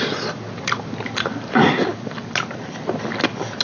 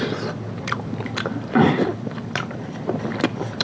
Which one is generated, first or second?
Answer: second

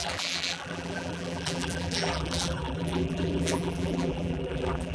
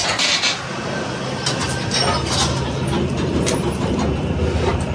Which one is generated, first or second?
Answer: first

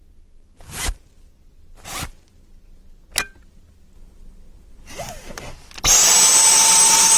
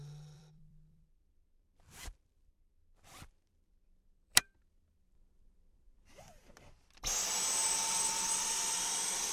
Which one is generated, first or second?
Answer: second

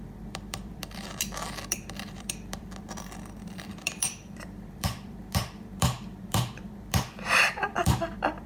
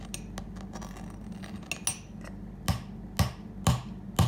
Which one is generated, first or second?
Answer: first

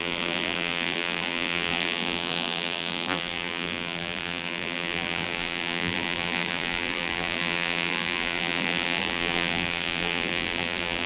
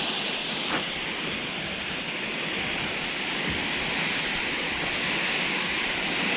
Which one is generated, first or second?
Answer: first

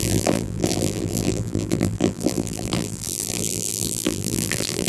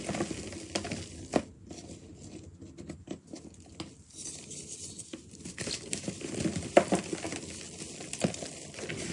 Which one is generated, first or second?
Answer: first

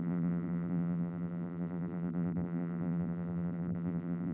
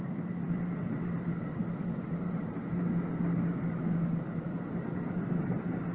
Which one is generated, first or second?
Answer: first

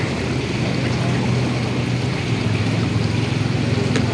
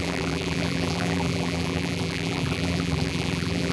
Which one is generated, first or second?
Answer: second